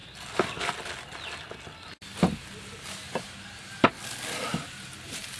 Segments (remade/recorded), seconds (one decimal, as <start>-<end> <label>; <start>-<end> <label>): 0.0-3.2 recorded; 3.2-3.9 remade; 3.9-4.5 recorded; 4.5-5.4 remade